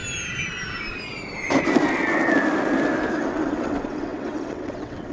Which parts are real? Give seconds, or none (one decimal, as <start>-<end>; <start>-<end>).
0.0-3.1